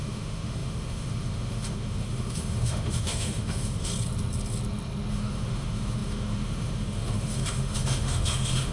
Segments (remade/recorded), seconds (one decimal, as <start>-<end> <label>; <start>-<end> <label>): 0.0-3.9 remade; 3.9-5.1 recorded; 5.1-8.7 remade